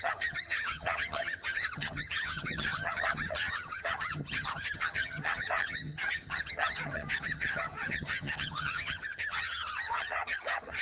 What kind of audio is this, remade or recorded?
remade